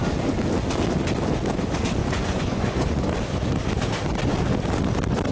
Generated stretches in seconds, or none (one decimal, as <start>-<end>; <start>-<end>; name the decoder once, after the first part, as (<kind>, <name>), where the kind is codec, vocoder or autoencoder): 2.0-3.1 (vocoder, Vocos)